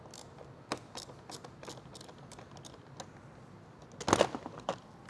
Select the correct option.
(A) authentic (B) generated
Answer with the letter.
A